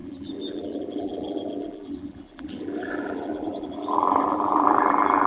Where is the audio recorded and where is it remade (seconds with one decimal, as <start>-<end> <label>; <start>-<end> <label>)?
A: 0.0-5.3 remade